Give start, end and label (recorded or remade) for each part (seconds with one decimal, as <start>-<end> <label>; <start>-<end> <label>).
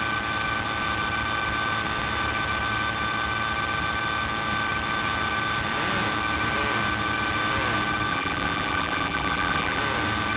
0.0-8.1 recorded; 8.1-9.8 remade; 9.8-10.4 recorded